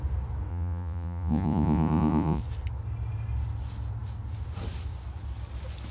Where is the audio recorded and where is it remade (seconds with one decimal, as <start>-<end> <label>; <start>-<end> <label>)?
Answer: 0.0-0.5 recorded; 0.5-2.4 remade; 2.4-5.9 recorded